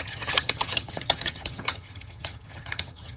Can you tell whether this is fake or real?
fake